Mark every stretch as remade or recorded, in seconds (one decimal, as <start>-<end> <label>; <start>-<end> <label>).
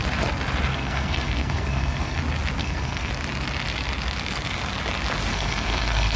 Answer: 0.0-0.7 recorded; 0.7-2.2 remade; 2.2-2.6 recorded; 2.6-3.1 remade; 3.1-5.3 recorded; 5.3-6.2 remade